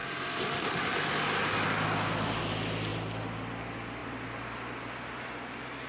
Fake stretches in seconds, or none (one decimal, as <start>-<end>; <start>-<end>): none